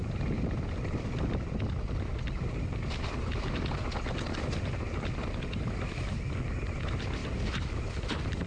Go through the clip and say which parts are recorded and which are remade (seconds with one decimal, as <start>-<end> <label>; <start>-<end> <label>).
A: 0.0-8.5 recorded